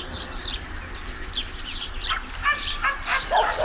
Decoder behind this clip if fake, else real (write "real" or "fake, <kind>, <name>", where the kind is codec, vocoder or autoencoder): real